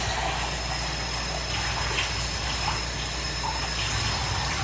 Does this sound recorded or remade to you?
recorded